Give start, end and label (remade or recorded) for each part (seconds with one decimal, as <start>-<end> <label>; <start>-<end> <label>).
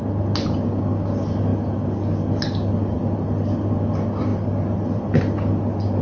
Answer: 0.0-6.0 recorded